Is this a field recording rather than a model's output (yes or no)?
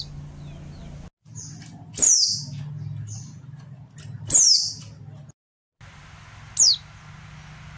yes